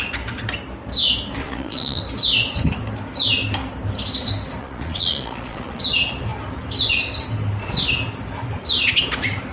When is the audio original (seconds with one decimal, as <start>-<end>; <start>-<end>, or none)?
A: 0.0-1.4; 2.0-4.6; 5.8-9.5